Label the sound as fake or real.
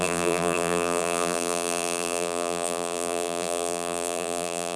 fake